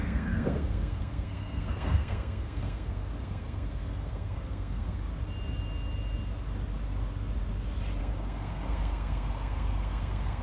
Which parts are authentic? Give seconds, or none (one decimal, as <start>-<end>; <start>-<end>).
5.1-8.0